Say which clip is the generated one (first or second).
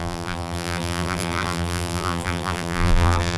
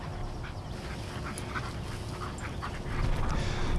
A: first